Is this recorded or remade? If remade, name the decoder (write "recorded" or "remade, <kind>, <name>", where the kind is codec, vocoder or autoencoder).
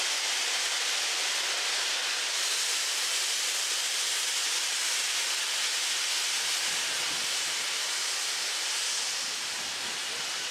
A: recorded